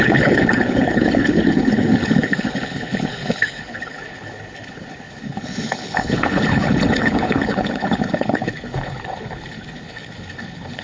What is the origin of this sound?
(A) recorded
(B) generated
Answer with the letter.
B